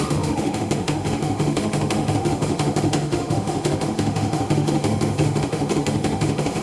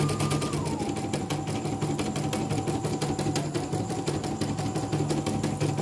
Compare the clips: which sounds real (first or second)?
second